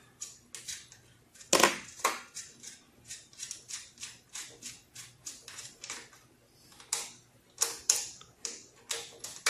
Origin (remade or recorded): recorded